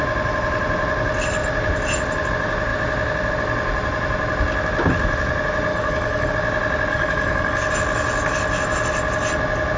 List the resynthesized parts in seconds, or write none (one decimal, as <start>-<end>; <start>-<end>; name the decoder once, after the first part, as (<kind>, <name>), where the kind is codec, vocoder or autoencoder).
5.7-6.3 (codec, DAC); 6.9-7.7